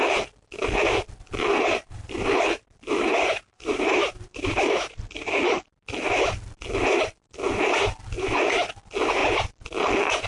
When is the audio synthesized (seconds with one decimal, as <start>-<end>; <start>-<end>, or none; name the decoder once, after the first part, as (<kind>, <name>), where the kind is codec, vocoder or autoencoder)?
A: 1.5-4.6 (vocoder, BigVGAN v2)